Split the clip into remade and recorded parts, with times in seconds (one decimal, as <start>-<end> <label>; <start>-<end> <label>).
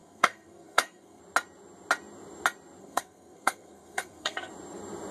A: 0.0-1.2 remade; 1.2-2.8 recorded; 2.8-4.5 remade; 4.5-5.1 recorded